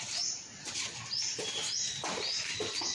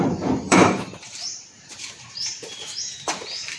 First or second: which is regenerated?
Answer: second